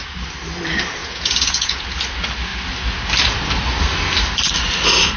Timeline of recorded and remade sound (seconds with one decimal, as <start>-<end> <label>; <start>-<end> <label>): 0.0-1.0 recorded; 1.0-2.0 remade; 2.0-5.2 recorded